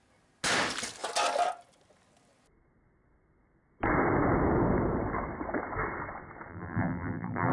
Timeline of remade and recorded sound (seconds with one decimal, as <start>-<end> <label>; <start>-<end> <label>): 0.0-6.5 recorded; 6.5-7.5 remade